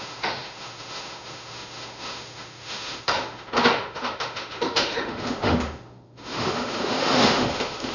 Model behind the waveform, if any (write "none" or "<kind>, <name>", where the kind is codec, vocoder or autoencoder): autoencoder, DAC-VAE